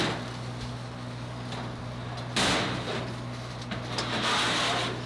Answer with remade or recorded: recorded